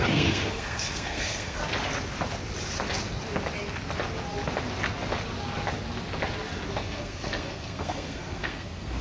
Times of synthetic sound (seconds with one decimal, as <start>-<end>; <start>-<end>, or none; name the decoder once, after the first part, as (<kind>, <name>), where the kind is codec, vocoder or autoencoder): 0.0-1.6 (codec, SNAC); 6.7-9.0